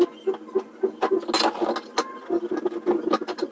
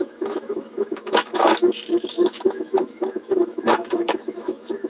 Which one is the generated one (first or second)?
second